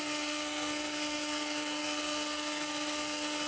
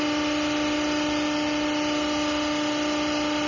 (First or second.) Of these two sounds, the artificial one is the first